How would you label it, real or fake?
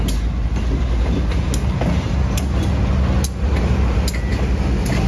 real